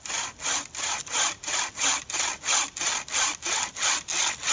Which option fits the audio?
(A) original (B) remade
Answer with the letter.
A